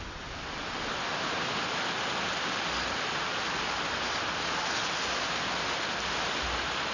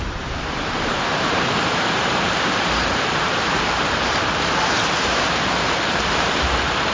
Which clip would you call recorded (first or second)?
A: first